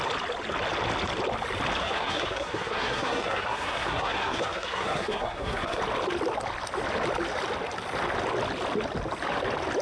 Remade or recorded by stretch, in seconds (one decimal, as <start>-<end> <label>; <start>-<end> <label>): 0.0-1.8 recorded; 1.8-5.8 remade; 5.8-9.8 recorded